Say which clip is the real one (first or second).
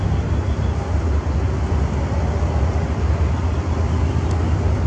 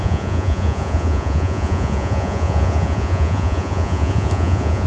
first